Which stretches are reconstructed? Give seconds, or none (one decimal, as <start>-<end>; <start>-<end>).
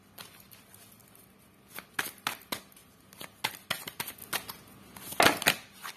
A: none